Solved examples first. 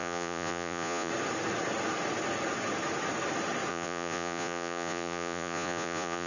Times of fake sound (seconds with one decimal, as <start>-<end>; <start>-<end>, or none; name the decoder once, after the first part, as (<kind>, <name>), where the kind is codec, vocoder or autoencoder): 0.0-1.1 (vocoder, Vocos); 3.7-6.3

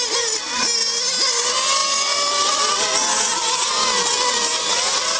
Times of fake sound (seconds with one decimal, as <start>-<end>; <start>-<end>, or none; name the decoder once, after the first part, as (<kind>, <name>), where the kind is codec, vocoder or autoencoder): none

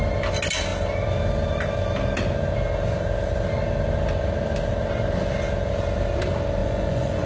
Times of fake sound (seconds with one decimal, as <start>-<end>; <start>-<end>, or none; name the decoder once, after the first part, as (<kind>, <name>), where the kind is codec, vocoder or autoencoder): 6.6-7.3 (vocoder, Vocos)